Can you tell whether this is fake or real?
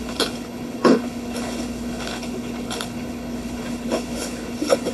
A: fake